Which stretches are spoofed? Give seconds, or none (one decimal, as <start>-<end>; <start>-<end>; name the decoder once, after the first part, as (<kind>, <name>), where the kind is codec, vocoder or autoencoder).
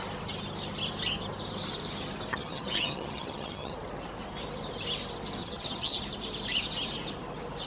2.3-3.7 (vocoder, HiFi-GAN); 5.4-6.0